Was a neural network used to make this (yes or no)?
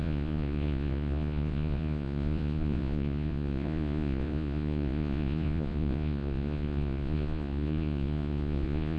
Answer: yes